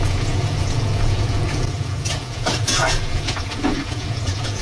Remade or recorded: remade